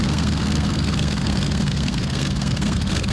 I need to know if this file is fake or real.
fake